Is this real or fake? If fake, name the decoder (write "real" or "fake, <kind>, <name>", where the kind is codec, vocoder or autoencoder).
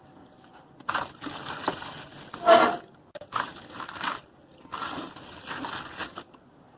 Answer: real